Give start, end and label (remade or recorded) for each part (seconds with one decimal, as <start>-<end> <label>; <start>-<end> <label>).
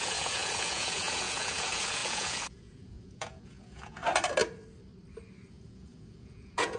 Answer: 0.0-4.0 remade; 4.0-5.5 recorded; 5.5-6.8 remade